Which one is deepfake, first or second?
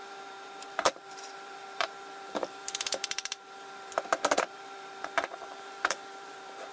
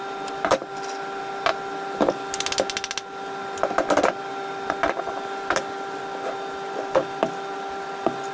first